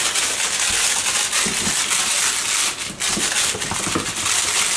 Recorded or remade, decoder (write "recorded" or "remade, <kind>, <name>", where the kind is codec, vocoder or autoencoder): recorded